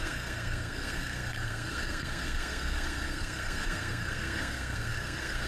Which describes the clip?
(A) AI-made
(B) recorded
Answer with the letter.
A